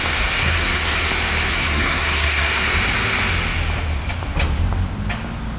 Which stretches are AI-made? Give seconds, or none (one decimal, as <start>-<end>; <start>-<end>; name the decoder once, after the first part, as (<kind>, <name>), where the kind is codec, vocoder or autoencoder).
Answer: 0.4-1.1 (codec, SNAC); 1.5-2.5